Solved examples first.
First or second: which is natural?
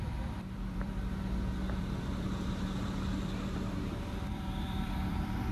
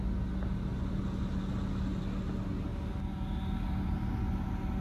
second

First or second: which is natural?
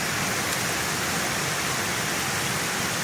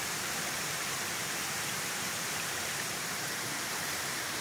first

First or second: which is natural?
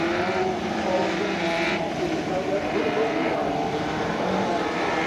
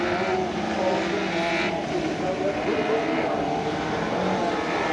second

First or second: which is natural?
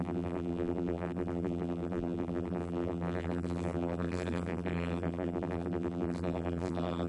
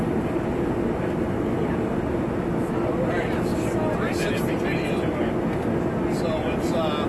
second